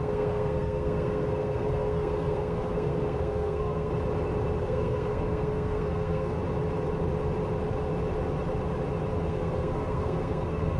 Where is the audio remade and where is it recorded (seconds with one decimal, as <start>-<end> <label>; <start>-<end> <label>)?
0.0-3.9 remade; 3.9-4.6 recorded; 4.6-6.4 remade; 6.4-9.3 recorded; 9.3-10.8 remade